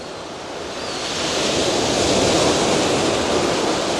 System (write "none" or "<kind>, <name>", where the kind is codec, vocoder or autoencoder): none